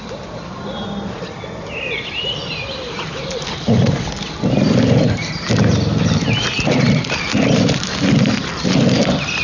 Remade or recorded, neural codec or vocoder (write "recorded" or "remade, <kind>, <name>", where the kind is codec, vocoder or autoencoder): recorded